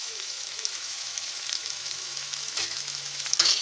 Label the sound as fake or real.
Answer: fake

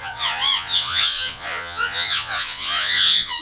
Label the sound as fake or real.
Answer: fake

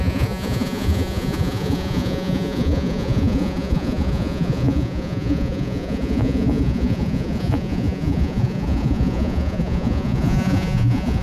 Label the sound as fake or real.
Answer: fake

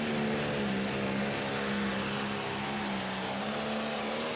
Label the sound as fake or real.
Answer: real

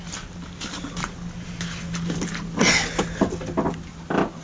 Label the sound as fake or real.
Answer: real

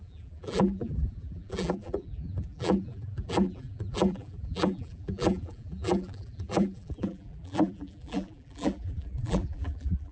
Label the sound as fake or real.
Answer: fake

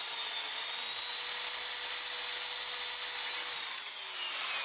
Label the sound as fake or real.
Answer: real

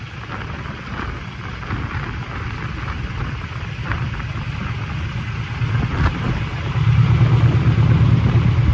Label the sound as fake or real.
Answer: real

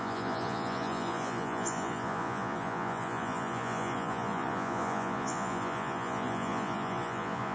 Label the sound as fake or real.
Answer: fake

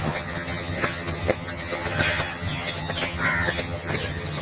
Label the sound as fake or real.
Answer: fake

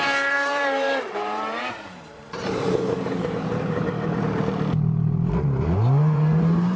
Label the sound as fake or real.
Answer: fake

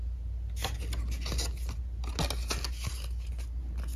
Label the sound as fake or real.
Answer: real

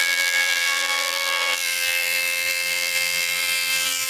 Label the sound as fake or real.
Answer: fake